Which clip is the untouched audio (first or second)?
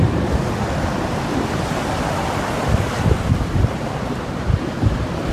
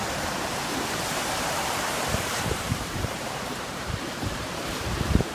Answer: first